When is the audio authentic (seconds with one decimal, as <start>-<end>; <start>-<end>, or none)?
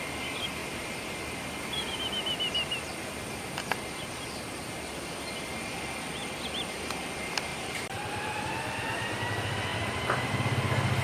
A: 0.0-7.5; 8.4-9.7; 10.3-11.0